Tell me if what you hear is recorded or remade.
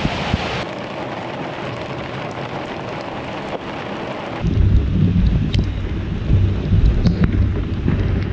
recorded